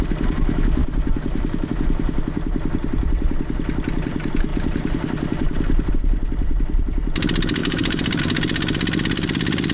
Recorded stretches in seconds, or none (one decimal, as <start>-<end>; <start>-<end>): 0.0-0.8; 1.7-4.5; 5.9-7.6; 8.2-9.7